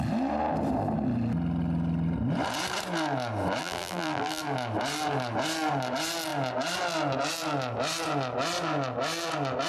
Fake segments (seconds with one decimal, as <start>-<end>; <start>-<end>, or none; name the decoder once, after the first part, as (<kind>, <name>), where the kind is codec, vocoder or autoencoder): 3.6-4.4 (vocoder, BigVGAN v2)